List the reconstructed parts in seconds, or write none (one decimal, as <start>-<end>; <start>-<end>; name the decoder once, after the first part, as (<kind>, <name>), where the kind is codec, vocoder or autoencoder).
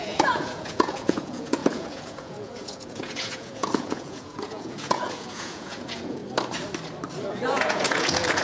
0.0-6.2 (vocoder, Vocos); 7.3-8.4